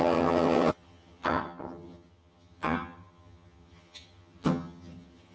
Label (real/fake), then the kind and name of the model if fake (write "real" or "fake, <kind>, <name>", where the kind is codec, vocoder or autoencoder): fake, vocoder, HiFi-GAN